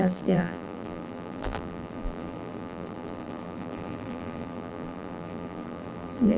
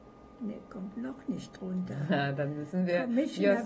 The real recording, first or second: second